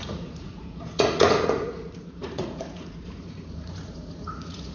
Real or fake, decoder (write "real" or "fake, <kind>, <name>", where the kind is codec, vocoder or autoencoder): fake, vocoder, Vocos